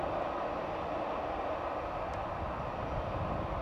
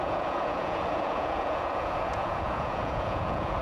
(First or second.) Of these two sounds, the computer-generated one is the second